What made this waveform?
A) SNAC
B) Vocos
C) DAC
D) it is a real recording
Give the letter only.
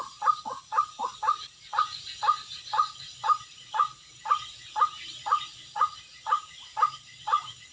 B